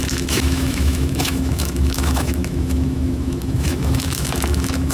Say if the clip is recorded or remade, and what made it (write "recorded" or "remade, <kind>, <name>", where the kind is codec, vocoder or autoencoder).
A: remade, autoencoder, DAC-VAE